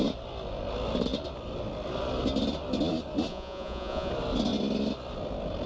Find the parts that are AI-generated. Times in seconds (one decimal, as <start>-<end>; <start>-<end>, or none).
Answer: 3.3-4.1